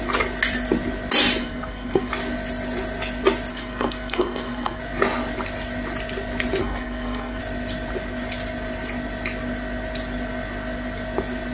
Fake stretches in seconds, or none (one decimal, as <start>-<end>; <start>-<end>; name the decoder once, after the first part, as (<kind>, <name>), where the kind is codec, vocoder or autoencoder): 1.4-2.1 (codec, SNAC); 3.5-4.8; 6.6-7.4